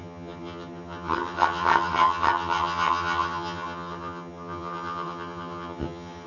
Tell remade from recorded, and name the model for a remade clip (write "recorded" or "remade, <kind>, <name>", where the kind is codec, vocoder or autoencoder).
remade, vocoder, HiFi-GAN